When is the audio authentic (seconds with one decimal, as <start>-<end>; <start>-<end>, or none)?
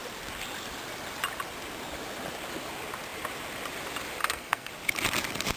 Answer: 0.0-4.2; 4.7-5.6